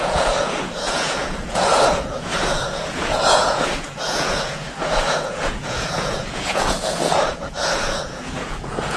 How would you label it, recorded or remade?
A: remade